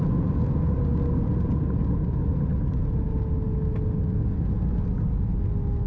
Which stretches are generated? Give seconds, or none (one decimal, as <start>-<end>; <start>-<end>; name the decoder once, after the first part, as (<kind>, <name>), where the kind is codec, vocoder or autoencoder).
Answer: none